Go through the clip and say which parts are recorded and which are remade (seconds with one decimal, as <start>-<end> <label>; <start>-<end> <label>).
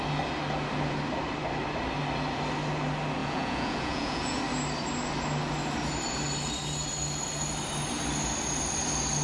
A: 0.0-3.2 recorded; 3.2-4.4 remade; 4.4-9.2 recorded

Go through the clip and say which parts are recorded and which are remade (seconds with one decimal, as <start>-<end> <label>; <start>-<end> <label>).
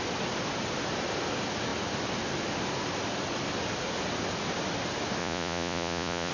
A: 0.0-5.2 recorded; 5.2-6.3 remade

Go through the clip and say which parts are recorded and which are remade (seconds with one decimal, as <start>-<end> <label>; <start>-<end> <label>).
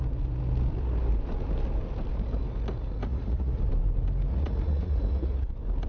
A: 0.0-3.1 recorded; 3.1-3.7 remade; 3.7-4.3 recorded; 4.3-5.5 remade; 5.5-5.9 recorded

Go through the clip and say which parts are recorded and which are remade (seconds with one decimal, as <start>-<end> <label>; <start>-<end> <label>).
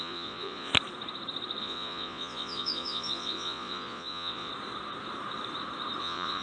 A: 0.0-0.7 remade; 0.7-1.6 recorded; 1.6-4.5 remade; 4.5-6.0 recorded; 6.0-6.4 remade